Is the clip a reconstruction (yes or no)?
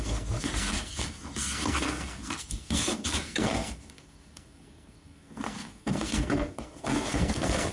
yes